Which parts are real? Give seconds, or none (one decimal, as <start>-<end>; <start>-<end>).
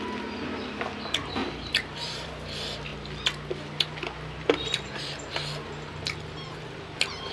0.0-1.4; 2.3-7.3